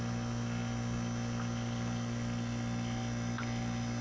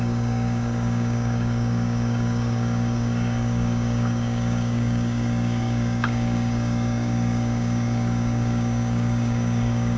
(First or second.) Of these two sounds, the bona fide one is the first